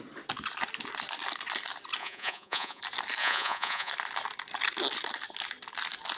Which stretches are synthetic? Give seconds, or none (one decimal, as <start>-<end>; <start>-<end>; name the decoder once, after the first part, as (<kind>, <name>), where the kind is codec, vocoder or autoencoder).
2.0-2.8 (vocoder, Vocos); 3.2-3.9